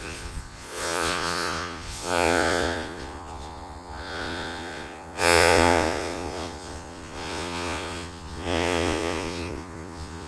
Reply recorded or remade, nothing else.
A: remade